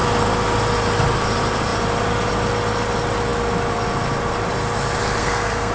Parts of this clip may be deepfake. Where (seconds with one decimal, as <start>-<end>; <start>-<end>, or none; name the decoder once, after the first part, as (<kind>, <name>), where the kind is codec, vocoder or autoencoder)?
5.2-5.7 (codec, SNAC)